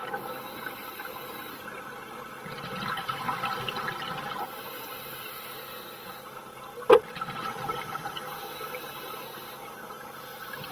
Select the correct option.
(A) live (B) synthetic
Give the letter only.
A